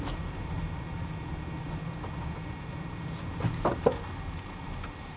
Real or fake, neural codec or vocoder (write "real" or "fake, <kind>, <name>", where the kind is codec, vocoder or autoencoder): real